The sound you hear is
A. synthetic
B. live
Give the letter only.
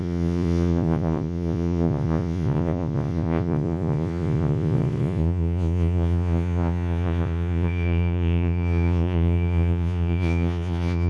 A